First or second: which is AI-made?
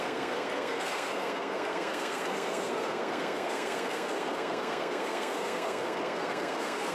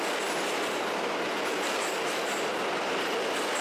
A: first